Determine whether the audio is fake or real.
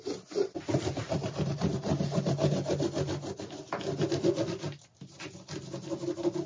real